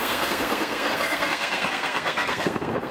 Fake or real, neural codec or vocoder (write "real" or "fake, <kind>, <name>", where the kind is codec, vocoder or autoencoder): fake, codec, SNAC